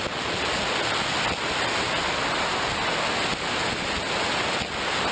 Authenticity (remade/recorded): recorded